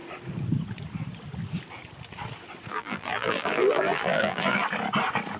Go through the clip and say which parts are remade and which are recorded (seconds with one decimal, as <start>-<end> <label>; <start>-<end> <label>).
0.0-2.7 recorded; 2.7-4.6 remade; 4.6-5.4 recorded